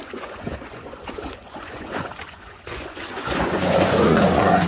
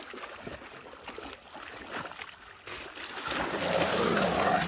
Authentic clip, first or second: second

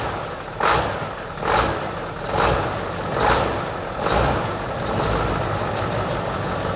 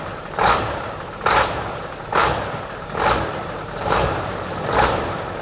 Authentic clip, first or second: first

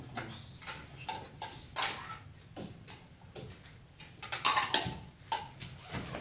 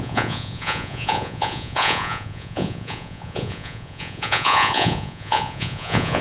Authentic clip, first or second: first